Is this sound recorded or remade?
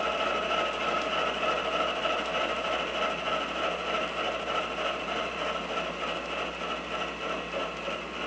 recorded